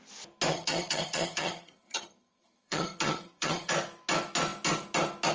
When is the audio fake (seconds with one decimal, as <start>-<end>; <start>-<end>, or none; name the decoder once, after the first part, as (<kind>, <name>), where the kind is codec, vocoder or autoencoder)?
0.5-3.7 (vocoder, HiFi-GAN)